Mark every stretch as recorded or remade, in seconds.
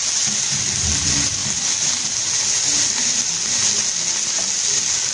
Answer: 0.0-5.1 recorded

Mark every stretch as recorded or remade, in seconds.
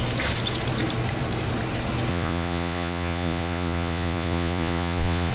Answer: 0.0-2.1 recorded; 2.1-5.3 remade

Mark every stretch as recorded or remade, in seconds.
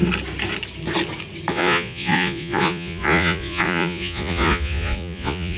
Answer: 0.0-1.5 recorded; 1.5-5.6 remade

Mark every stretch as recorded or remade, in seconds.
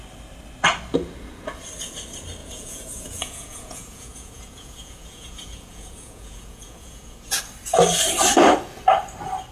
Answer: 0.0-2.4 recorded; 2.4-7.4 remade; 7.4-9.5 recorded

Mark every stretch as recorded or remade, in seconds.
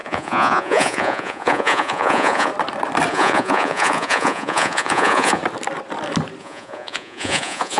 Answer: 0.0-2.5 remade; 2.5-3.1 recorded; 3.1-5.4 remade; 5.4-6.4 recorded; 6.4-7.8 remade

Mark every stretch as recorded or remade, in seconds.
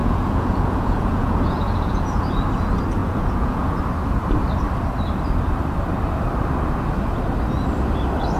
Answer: 0.0-2.2 remade; 2.2-3.0 recorded; 3.0-3.7 remade; 3.7-8.4 recorded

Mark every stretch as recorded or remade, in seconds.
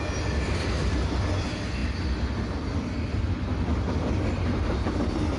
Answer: 0.0-5.4 recorded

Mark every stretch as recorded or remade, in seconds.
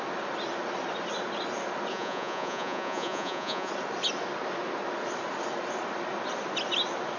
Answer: 0.0-1.9 recorded; 1.9-3.7 remade; 3.7-7.2 recorded